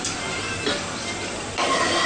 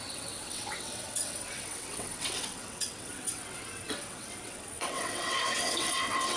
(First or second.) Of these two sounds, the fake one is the second